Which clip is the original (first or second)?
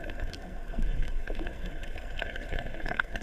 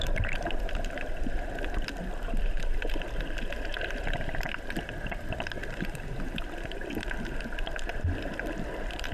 second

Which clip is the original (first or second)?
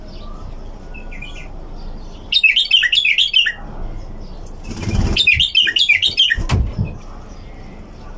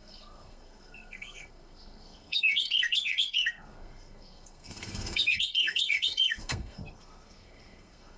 first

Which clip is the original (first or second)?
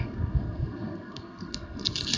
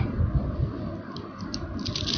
second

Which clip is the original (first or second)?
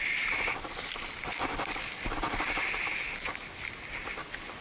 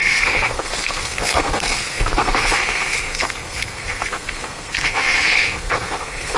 first